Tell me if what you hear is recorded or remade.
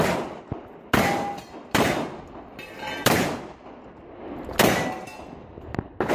recorded